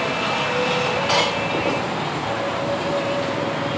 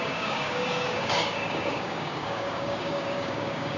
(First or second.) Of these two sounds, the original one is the first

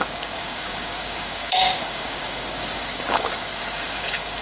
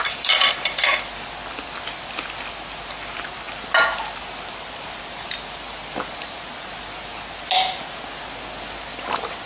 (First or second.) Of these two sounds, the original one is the second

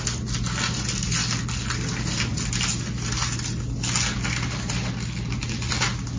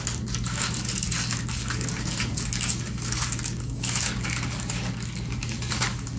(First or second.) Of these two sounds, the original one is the first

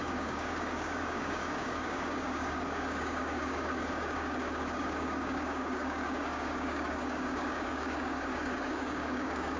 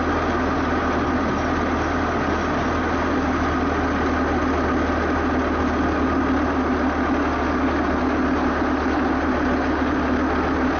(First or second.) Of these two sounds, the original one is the second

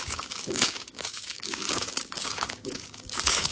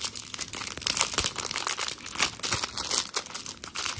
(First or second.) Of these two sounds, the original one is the second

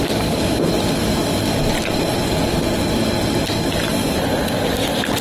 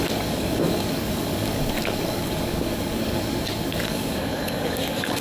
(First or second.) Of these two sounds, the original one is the first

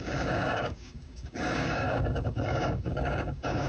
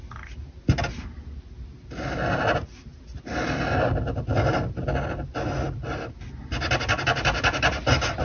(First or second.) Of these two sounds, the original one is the second